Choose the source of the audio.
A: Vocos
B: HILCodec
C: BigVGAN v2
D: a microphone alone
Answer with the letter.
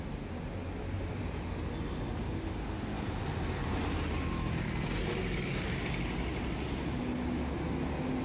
D